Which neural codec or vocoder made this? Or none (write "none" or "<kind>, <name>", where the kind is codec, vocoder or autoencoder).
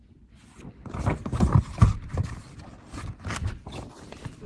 none